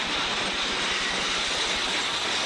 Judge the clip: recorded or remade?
recorded